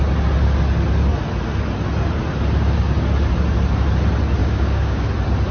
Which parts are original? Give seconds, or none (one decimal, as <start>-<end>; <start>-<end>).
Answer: 0.0-4.4; 5.1-5.5